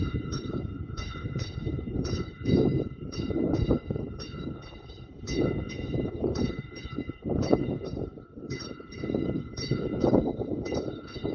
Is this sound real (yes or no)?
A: no